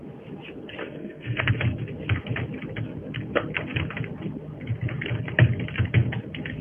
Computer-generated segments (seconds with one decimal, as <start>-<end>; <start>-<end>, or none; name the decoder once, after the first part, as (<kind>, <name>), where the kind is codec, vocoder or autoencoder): 0.8-1.5 (codec, SNAC)